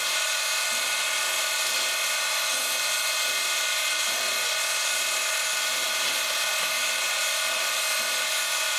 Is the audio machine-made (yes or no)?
no